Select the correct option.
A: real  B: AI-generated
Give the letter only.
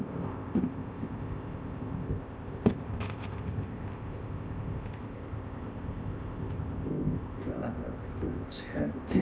B